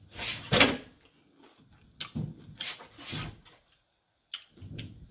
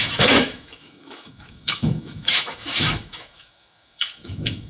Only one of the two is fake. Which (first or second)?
second